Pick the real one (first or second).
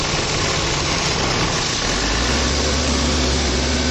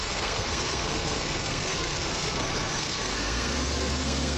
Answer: first